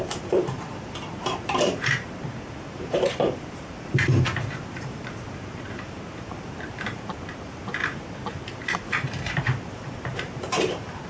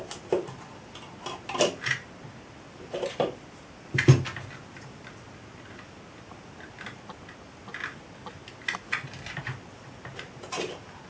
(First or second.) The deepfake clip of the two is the first